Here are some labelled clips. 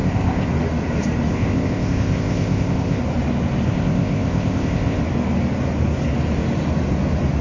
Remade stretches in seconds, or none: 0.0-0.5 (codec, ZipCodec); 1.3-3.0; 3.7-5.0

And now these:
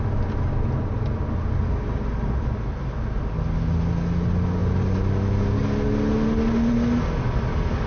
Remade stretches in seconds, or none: none

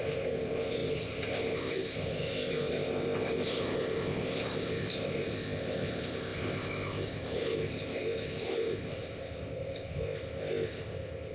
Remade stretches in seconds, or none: 0.0-11.3 (codec, ZipCodec)